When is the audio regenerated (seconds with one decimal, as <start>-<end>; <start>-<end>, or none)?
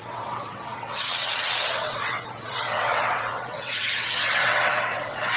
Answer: 0.0-5.4